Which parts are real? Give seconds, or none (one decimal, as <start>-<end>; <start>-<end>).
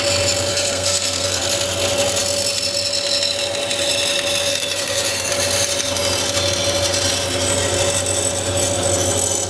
0.0-0.5; 1.4-4.5; 5.3-9.5